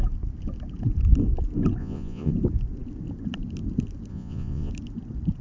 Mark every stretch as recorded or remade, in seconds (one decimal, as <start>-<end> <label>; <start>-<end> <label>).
0.0-1.8 recorded; 1.8-2.3 remade; 2.3-4.1 recorded; 4.1-4.7 remade; 4.7-5.4 recorded